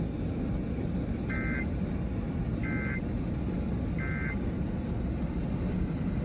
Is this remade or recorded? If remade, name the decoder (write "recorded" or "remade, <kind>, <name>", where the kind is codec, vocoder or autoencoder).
recorded